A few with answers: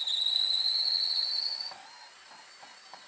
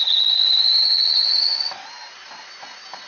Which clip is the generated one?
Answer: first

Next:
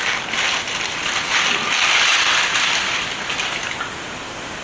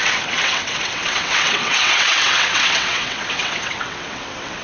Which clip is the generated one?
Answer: second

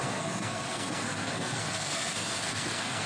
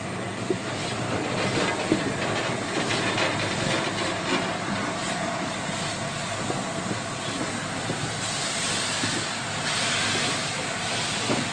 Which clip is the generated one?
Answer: first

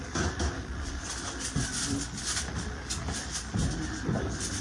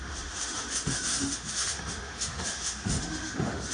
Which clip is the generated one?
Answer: second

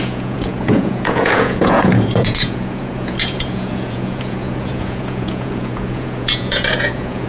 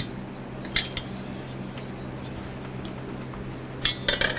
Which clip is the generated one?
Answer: first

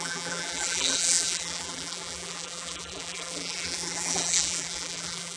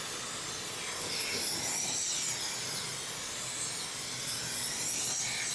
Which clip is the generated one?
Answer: first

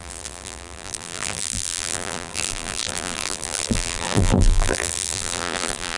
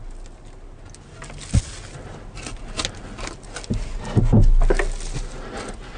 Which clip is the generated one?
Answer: first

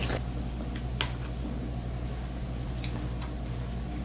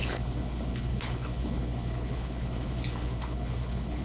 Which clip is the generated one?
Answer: second